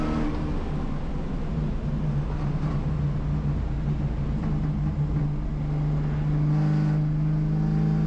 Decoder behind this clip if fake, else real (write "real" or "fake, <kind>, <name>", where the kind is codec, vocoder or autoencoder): real